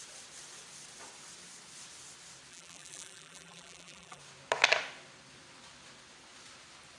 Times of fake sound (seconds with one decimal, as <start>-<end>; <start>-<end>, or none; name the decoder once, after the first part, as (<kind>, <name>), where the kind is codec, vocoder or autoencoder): 2.5-4.2 (vocoder, BigVGAN v2)